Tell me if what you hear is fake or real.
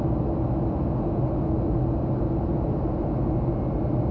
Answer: real